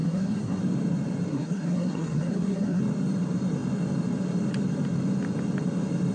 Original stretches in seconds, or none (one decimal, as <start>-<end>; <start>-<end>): 0.6-1.3; 2.8-6.1

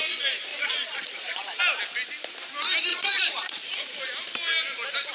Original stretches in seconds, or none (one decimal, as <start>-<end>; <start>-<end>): 0.0-0.5; 1.6-2.9; 4.0-5.1